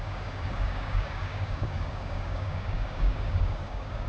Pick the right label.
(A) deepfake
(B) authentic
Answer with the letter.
A